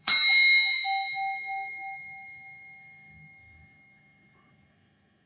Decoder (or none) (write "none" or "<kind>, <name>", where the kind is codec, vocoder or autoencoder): autoencoder, DAC-VAE